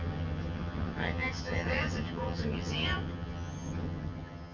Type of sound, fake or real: fake